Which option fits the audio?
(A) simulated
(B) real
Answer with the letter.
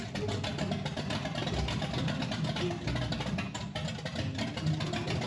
B